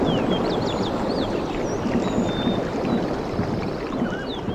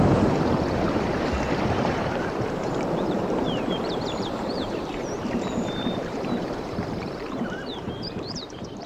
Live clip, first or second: first